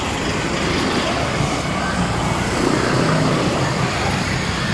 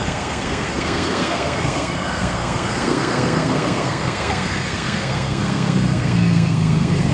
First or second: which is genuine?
first